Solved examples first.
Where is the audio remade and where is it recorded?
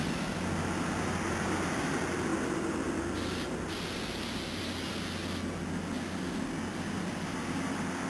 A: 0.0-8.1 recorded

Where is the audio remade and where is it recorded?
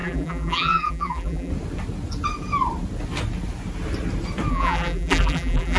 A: 0.0-1.5 remade; 1.5-4.5 recorded; 4.5-5.8 remade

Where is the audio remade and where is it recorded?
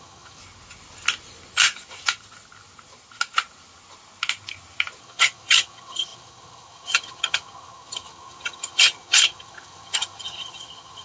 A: 0.0-0.4 remade; 0.4-5.0 recorded; 5.0-11.0 remade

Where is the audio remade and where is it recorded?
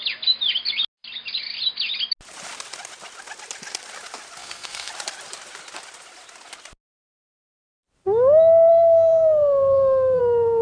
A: 0.0-4.4 recorded; 4.4-4.9 remade; 4.9-8.7 recorded; 8.7-10.2 remade; 10.2-10.6 recorded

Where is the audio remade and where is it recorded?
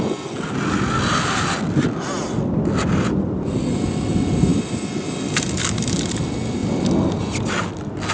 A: 0.0-8.1 recorded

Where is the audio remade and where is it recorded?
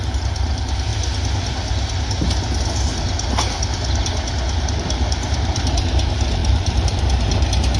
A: 0.0-0.9 remade; 0.9-4.6 recorded; 4.6-7.8 remade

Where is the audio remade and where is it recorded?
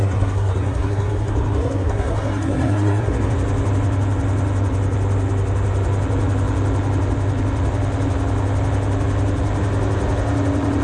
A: 0.0-3.3 remade; 3.3-10.8 recorded